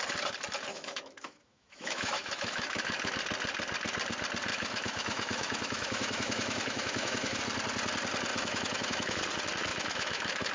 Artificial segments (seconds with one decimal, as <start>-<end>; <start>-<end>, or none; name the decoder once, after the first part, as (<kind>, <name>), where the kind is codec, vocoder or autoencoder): 0.7-3.1 (autoencoder, DAC-VAE); 4.5-7.4; 8.3-9.2; 9.7-10.5